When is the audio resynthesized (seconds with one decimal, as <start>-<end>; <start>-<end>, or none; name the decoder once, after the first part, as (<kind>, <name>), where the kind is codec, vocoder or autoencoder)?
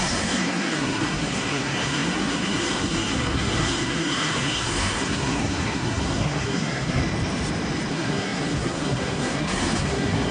0.0-7.0 (codec, SNAC); 7.9-10.3